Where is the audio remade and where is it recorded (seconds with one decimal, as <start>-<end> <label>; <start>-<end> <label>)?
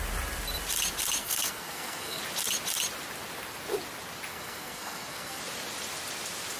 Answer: 0.0-1.2 recorded; 1.2-2.2 remade; 2.2-4.3 recorded; 4.3-5.4 remade; 5.4-6.6 recorded